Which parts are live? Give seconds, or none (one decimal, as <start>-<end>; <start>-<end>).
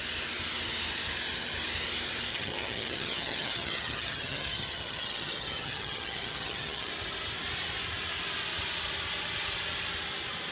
0.0-2.3; 6.9-10.5